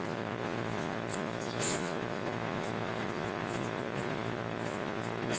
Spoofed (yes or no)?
yes